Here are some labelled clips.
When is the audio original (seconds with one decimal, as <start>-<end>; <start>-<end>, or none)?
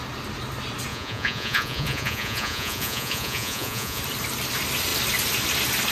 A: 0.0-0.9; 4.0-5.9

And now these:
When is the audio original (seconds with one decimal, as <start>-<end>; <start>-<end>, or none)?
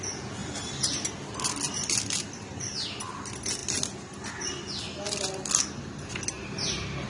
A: 0.0-7.1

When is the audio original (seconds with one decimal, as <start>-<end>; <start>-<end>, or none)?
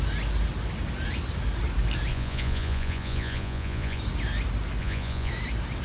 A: 0.0-2.1; 4.0-4.8; 5.3-5.8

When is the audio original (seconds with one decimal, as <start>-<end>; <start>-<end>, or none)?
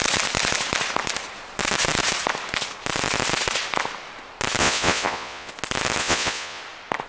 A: 0.0-4.6; 5.5-6.0; 6.6-7.1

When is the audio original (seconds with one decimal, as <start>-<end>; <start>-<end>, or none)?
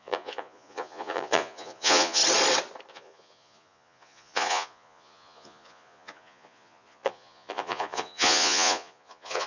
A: 2.2-2.9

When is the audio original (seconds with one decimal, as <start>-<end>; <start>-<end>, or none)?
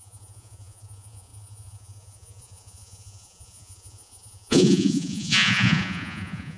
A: none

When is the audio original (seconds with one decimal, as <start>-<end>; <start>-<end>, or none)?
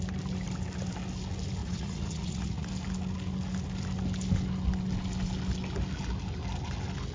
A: 0.0-1.6; 2.7-7.1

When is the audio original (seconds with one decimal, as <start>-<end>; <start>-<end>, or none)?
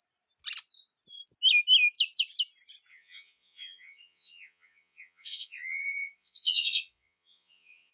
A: 0.0-2.9